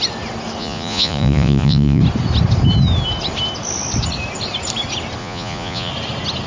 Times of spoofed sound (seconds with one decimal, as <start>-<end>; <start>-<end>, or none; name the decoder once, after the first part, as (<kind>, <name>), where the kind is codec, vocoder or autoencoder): 0.6-2.0 (vocoder, Vocos); 5.2-5.9